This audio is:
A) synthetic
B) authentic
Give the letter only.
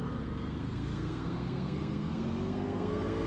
A